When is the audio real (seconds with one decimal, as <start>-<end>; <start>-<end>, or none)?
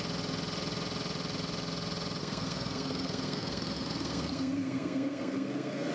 0.0-2.2